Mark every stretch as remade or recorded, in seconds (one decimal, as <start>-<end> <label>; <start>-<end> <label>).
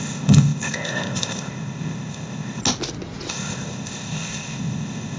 0.0-2.6 remade; 2.6-3.3 recorded; 3.3-5.2 remade